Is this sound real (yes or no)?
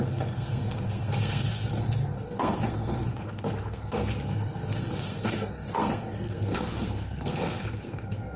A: no